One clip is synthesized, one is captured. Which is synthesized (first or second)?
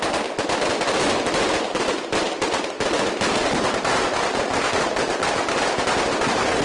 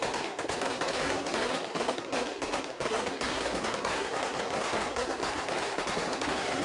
second